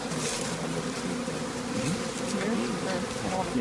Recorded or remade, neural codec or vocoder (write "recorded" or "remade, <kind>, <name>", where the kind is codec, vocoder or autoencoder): recorded